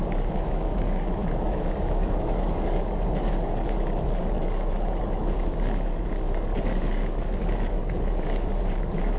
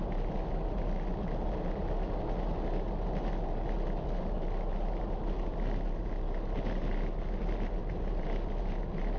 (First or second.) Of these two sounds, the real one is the second